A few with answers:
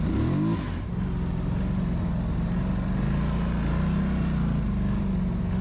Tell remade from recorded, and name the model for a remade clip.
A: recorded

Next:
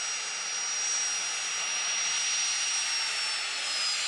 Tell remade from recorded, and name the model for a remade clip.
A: recorded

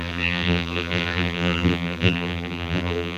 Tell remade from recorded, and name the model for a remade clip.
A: remade, vocoder, BigVGAN v2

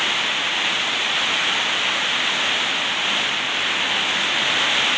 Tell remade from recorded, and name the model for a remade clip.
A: recorded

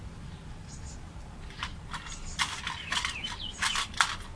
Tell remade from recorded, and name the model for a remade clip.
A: recorded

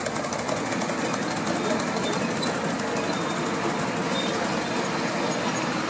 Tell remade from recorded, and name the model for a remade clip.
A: recorded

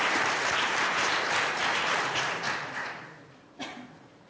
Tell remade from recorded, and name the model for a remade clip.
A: remade, vocoder, BigVGAN v2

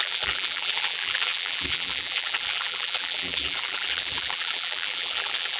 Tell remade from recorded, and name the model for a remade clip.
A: remade, vocoder, BigVGAN v2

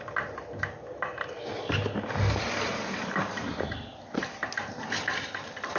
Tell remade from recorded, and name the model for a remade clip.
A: recorded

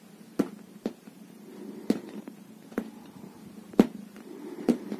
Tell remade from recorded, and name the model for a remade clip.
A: remade, vocoder, BigVGAN v2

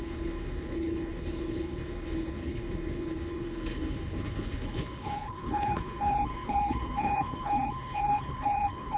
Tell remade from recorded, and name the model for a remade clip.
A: remade, codec, HILCodec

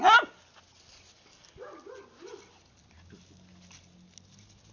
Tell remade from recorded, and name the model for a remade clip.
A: recorded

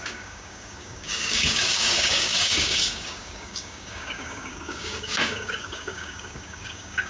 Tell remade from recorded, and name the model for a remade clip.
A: remade, codec, DAC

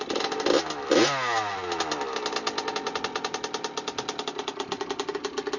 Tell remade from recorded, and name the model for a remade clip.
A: recorded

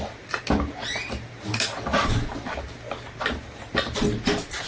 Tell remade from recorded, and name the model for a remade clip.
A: recorded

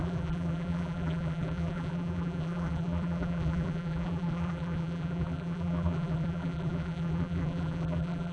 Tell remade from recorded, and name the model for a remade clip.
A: remade, vocoder, BigVGAN v2